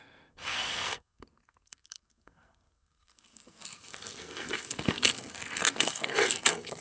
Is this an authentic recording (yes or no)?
no